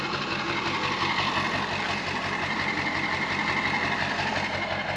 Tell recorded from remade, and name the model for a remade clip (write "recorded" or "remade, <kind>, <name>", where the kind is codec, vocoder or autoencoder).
recorded